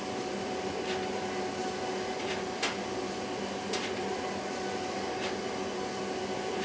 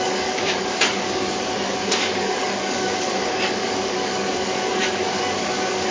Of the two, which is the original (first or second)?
first